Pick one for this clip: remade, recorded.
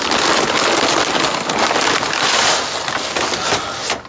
recorded